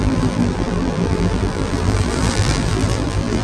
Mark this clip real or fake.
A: fake